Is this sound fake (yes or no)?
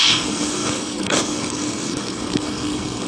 yes